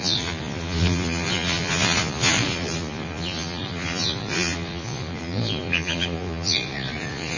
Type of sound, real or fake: fake